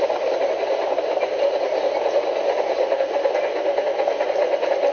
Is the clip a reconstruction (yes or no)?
no